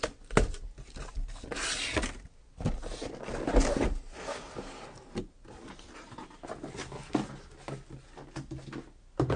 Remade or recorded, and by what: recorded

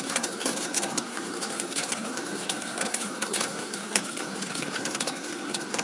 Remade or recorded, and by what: remade, codec, SNAC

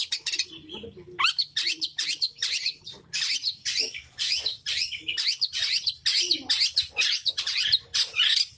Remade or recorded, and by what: recorded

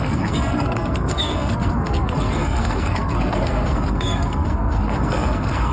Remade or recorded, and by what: remade, codec, SNAC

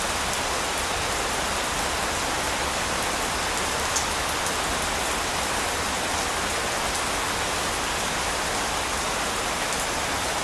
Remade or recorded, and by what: recorded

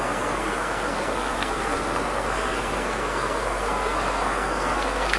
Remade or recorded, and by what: remade, codec, SNAC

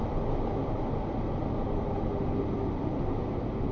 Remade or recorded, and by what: recorded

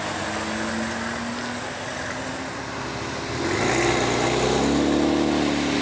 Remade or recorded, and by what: recorded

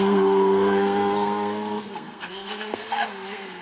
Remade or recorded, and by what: remade, codec, SNAC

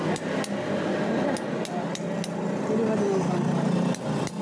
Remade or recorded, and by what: recorded